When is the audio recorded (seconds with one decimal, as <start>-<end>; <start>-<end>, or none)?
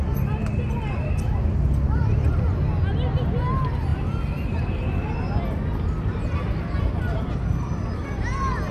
0.0-8.7